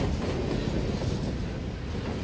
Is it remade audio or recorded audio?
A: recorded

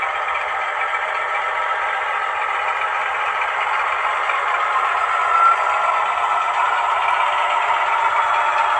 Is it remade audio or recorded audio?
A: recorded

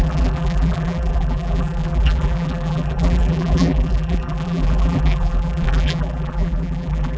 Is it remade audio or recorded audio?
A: remade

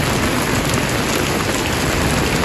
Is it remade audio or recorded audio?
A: recorded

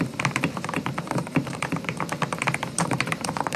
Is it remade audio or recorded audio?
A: remade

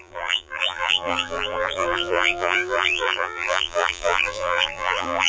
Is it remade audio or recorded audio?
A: remade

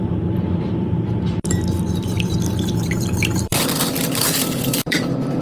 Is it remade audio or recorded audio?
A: remade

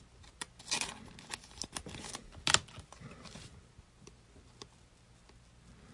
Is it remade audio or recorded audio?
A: recorded